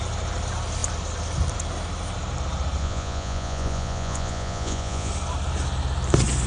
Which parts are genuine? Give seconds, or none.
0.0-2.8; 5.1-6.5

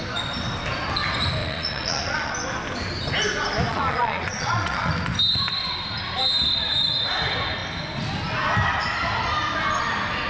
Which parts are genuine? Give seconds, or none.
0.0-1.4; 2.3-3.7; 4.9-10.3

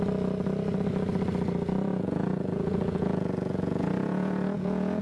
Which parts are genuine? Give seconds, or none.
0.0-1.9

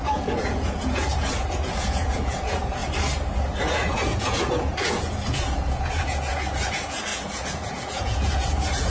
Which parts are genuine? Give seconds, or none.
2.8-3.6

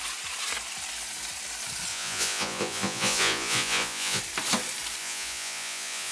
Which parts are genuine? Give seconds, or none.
0.0-1.9; 4.2-5.0

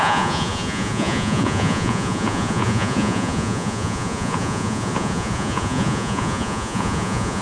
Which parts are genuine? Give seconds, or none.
none